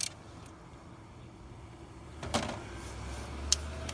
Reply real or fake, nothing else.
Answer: real